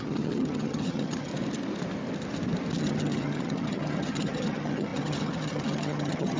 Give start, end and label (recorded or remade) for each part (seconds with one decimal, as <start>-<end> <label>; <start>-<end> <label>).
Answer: 0.0-1.3 remade; 1.3-2.8 recorded; 2.8-6.4 remade